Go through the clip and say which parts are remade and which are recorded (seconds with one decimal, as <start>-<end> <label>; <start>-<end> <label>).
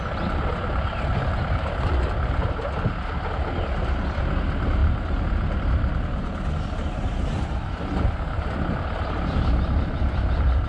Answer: 0.0-2.4 remade; 2.4-4.2 recorded; 4.2-10.7 remade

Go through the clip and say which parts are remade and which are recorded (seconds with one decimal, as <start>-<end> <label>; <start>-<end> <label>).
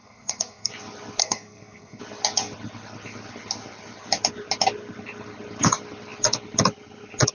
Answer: 0.0-0.7 remade; 0.7-1.2 recorded; 1.2-2.0 remade; 2.0-7.3 recorded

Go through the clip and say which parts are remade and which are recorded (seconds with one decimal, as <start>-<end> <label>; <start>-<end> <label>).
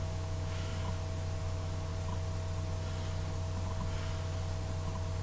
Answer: 0.0-0.7 remade; 0.7-1.4 recorded; 1.4-1.9 remade; 1.9-5.2 recorded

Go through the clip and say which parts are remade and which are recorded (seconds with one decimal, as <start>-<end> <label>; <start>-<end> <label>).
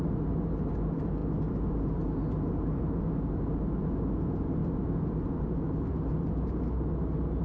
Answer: 0.0-7.4 recorded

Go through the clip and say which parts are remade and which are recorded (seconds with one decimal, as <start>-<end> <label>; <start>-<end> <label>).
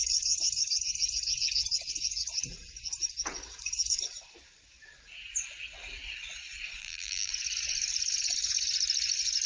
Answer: 0.0-6.8 recorded; 6.8-7.3 remade; 7.3-9.5 recorded